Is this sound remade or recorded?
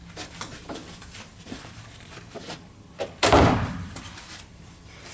remade